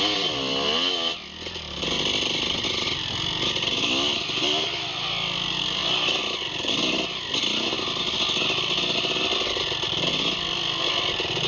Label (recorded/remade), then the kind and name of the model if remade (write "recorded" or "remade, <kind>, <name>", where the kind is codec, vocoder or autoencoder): recorded